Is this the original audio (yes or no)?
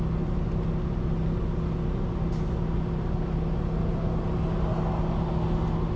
yes